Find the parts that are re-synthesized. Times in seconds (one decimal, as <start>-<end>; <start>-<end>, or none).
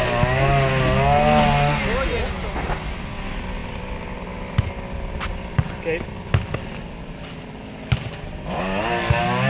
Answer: none